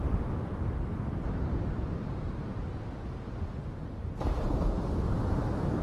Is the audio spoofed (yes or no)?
no